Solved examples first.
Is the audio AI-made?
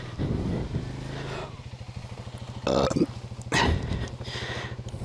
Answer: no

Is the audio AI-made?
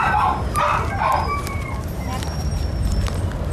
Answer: yes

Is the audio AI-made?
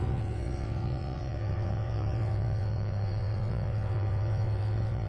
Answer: yes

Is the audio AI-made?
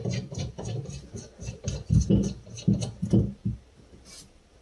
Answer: no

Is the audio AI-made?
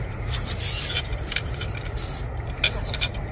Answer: no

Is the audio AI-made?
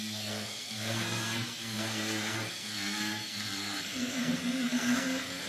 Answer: yes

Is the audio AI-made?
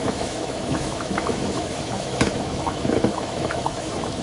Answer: yes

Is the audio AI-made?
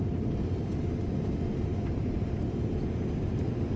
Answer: no